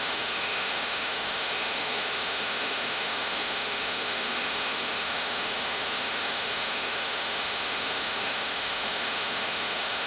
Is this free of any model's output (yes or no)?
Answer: no